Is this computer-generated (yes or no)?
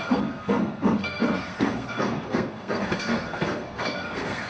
yes